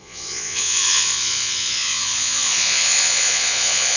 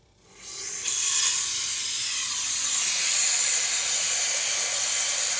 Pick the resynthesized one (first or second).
first